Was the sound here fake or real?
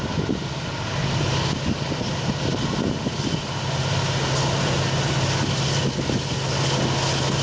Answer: real